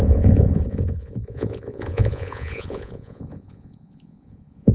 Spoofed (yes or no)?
yes